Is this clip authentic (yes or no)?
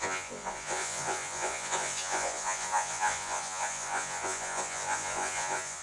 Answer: no